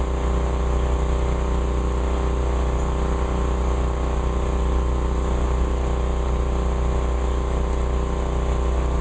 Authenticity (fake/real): real